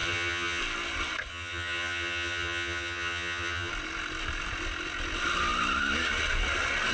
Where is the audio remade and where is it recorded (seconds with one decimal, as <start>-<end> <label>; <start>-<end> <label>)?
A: 0.0-0.6 remade; 0.6-1.3 recorded; 1.3-3.7 remade; 3.7-6.9 recorded